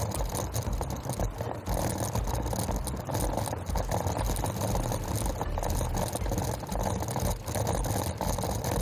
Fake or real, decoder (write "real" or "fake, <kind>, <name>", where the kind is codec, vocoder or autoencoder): real